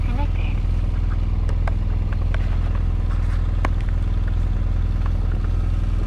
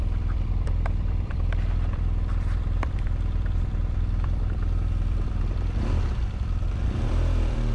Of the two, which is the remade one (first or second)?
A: second